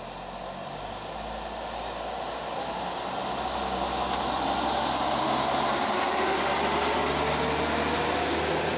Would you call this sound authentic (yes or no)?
yes